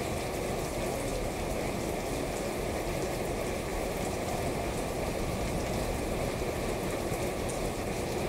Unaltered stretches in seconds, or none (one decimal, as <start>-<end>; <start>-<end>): 0.0-1.1; 1.8-3.7; 5.2-8.3